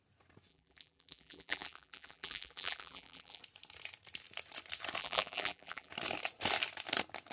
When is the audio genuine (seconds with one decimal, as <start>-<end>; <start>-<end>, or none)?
0.0-0.5; 3.4-5.0; 5.9-7.3